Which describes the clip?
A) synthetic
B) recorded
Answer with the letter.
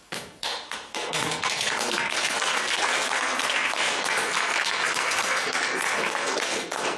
A